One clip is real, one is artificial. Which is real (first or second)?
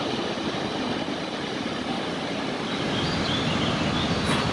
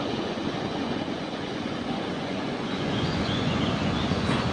first